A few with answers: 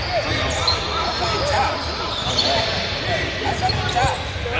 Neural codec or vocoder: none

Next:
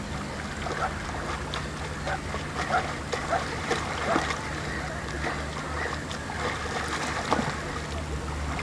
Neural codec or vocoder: none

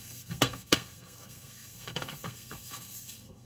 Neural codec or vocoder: codec, SNAC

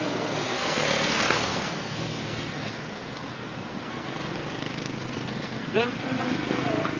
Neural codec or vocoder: codec, SNAC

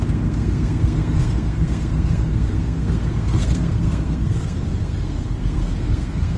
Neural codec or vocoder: codec, SNAC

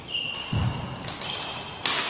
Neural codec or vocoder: none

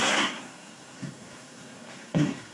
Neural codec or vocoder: codec, SNAC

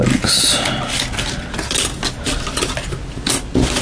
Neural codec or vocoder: none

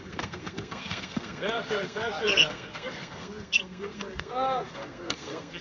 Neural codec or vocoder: codec, SNAC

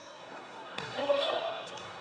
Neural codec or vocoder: codec, SNAC